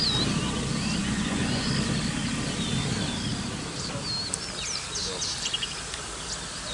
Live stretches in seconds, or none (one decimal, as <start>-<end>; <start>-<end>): 0.0-1.0; 1.7-6.7